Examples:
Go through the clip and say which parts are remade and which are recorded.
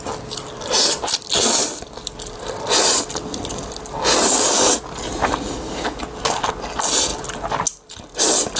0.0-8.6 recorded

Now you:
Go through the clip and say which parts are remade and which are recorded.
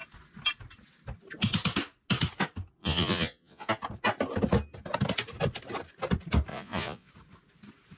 0.0-2.8 recorded; 2.8-3.7 remade; 3.7-6.5 recorded; 6.5-7.1 remade; 7.1-8.0 recorded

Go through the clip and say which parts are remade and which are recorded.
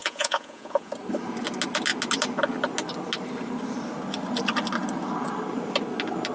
0.0-0.9 remade; 0.9-6.3 recorded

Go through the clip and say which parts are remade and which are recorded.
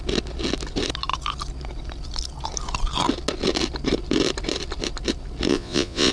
0.0-5.5 recorded; 5.5-6.1 remade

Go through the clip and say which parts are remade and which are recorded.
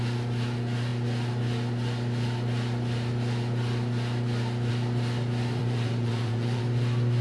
0.0-5.6 recorded; 5.6-6.6 remade; 6.6-7.2 recorded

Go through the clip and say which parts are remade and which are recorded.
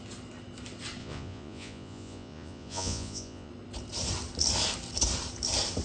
0.0-1.0 recorded; 1.0-3.5 remade; 3.5-5.8 recorded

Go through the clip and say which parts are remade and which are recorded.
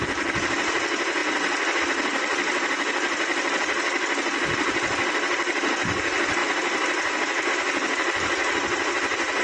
0.0-9.4 recorded